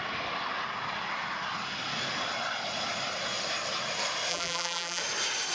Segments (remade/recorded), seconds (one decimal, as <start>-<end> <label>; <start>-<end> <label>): 0.0-4.3 recorded; 4.3-5.0 remade; 5.0-5.5 recorded